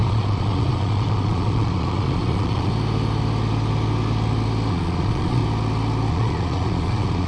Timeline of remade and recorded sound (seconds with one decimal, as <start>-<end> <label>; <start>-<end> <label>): 0.0-2.7 remade; 2.7-4.7 recorded; 4.7-5.4 remade; 5.4-6.1 recorded; 6.1-7.3 remade